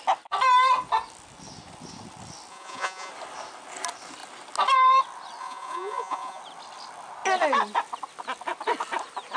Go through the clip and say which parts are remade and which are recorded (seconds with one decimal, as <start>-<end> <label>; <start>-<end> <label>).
0.0-2.5 recorded; 2.5-3.1 remade; 3.1-5.4 recorded; 5.4-6.4 remade; 6.4-9.4 recorded